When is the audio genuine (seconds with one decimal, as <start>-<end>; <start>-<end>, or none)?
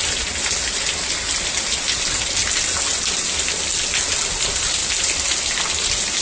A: 0.0-6.2